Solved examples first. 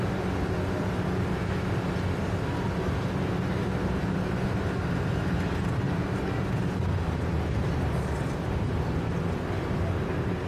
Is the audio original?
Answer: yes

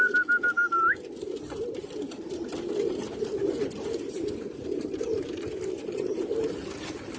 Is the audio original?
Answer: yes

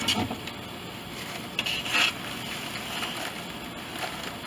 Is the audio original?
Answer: yes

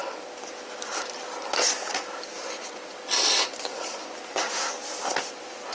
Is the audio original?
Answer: yes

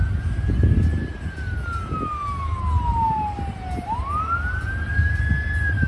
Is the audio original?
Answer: yes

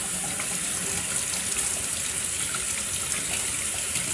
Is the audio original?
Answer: yes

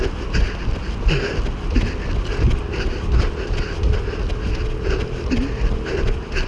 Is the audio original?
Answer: yes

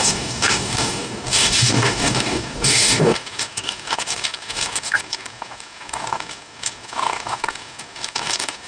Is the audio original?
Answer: no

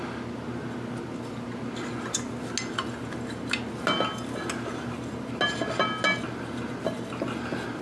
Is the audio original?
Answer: yes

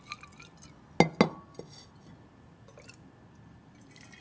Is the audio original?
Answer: yes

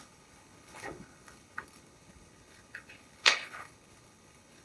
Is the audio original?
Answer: no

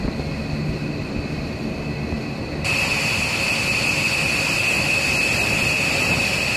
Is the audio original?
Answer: yes